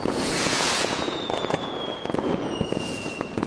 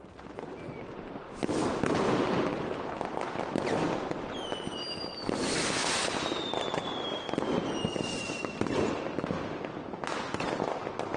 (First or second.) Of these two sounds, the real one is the second